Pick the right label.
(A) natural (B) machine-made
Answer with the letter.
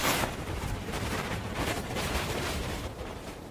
B